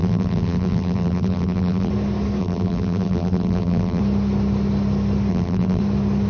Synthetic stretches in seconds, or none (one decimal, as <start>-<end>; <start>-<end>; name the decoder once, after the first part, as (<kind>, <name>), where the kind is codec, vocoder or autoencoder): 0.0-1.9 (vocoder, BigVGAN v2); 2.4-4.0; 5.3-5.8